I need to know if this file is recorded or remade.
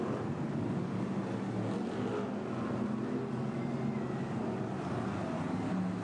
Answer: recorded